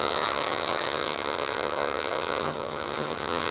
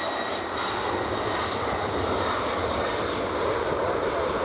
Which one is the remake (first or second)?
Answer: first